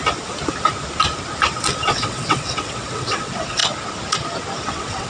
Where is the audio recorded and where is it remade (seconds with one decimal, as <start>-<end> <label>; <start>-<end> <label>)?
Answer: 0.0-1.9 recorded; 1.9-3.6 remade; 3.6-4.6 recorded; 4.6-5.1 remade